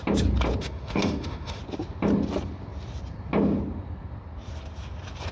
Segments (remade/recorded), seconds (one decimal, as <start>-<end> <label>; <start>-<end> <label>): 0.0-0.6 recorded; 0.6-1.6 remade; 1.6-5.3 recorded